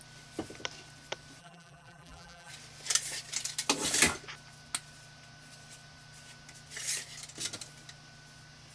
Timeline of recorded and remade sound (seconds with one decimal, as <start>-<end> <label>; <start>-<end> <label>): 0.0-1.4 recorded; 1.4-2.5 remade; 2.5-8.7 recorded

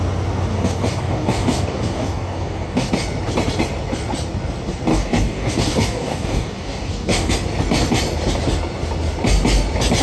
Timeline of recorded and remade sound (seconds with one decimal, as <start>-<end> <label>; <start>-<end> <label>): 0.0-0.5 recorded; 0.5-2.9 remade; 2.9-4.9 recorded; 4.9-7.3 remade; 7.3-10.0 recorded

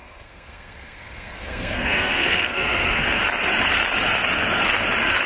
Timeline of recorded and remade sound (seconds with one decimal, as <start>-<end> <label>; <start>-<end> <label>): 0.0-3.2 remade; 3.2-5.3 recorded

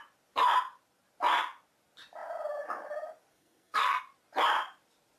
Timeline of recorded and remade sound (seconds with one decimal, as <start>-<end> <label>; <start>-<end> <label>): 0.0-3.3 recorded; 3.3-4.0 remade; 4.0-5.2 recorded

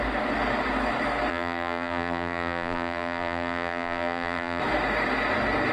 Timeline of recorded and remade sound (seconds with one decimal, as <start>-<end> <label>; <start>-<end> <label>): 0.0-1.3 recorded; 1.3-4.6 remade; 4.6-5.7 recorded

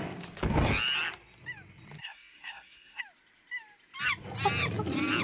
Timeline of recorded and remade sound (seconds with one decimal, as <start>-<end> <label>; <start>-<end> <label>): 0.0-2.0 recorded; 2.0-3.0 remade; 3.0-5.2 recorded

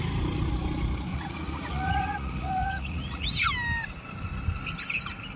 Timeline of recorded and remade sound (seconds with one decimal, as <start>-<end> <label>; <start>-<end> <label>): 0.0-1.1 recorded; 1.1-3.2 remade; 3.2-5.4 recorded